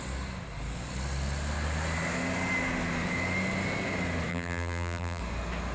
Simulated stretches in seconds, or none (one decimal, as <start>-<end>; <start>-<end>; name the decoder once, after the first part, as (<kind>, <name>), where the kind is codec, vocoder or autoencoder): 4.3-5.2 (vocoder, BigVGAN v2)